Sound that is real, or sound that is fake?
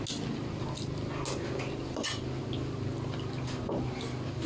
real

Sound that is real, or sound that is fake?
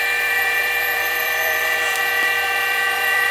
fake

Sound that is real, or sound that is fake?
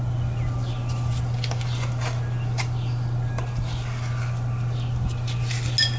real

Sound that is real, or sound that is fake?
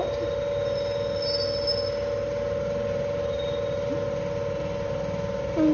real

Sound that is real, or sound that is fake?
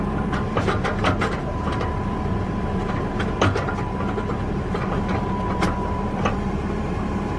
fake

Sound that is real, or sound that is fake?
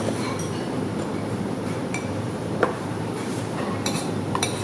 fake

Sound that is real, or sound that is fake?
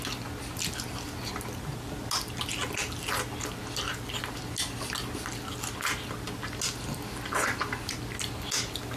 real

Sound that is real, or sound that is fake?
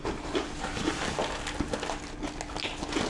real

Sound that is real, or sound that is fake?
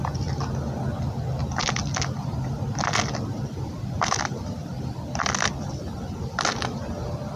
real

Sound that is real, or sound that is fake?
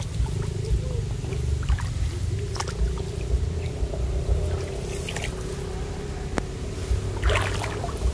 real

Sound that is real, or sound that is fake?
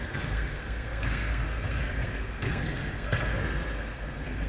fake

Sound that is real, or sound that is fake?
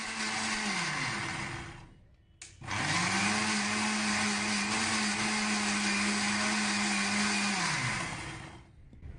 real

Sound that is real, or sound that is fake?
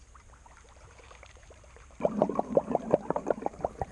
fake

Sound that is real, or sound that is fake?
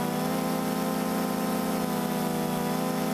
real